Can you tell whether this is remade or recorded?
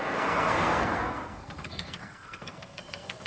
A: remade